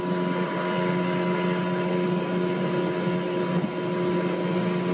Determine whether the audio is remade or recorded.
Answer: recorded